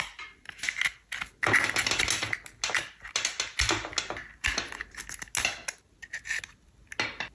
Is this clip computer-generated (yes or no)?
no